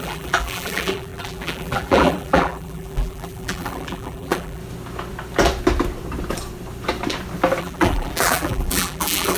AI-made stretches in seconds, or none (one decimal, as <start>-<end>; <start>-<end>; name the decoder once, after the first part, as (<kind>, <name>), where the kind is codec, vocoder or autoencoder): 0.0-4.6 (vocoder, BigVGAN v2); 7.6-9.4